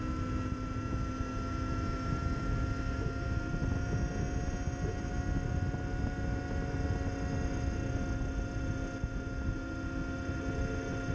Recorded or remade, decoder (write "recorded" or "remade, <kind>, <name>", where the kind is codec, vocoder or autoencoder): recorded